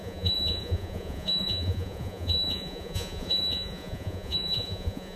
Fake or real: fake